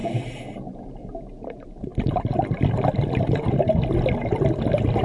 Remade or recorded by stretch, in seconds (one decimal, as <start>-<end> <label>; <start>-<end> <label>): 0.0-5.0 recorded

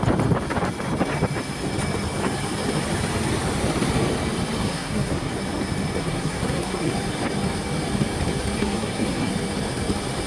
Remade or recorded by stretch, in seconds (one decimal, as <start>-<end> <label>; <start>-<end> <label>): 0.0-4.6 recorded; 4.6-5.3 remade; 5.3-6.0 recorded; 6.0-6.9 remade; 6.9-8.6 recorded; 8.6-9.3 remade; 9.3-10.3 recorded

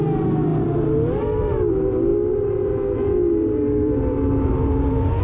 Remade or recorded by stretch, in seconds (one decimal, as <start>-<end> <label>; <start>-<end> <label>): 0.0-5.2 recorded

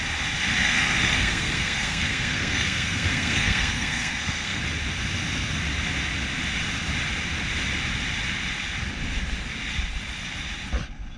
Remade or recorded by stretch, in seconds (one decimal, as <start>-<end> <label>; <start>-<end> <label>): 0.0-0.6 recorded; 0.6-4.6 remade; 4.6-11.2 recorded

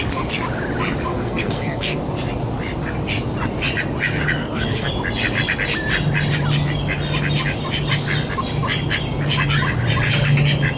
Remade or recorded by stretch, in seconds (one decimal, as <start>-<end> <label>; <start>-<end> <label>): 0.0-1.1 recorded; 1.1-2.0 remade; 2.0-4.4 recorded; 4.4-4.9 remade; 4.9-10.8 recorded

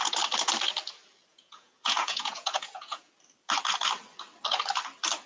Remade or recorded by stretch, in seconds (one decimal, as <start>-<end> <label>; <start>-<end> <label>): 0.0-1.3 recorded; 1.3-3.1 remade; 3.1-5.3 recorded